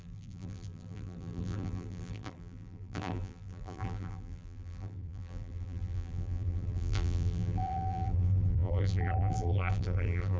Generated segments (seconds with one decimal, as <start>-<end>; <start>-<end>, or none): 0.0-10.4